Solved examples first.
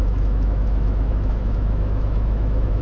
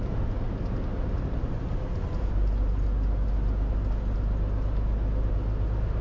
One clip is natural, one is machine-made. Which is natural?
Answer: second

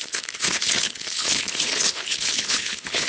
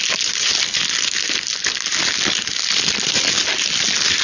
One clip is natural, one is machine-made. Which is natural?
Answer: second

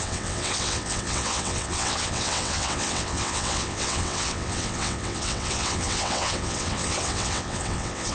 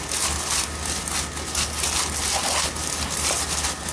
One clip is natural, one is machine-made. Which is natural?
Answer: second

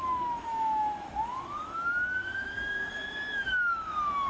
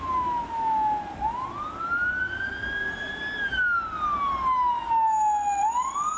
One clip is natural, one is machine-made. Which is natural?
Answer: second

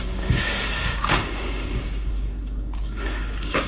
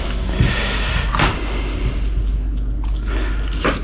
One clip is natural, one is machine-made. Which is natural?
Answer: second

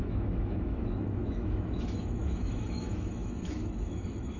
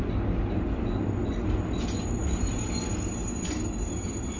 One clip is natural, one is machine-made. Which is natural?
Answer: second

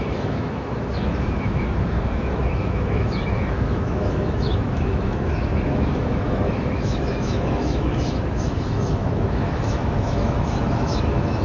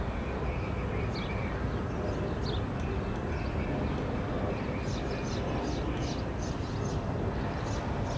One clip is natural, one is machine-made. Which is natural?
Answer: second